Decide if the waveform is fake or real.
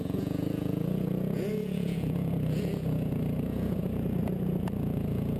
fake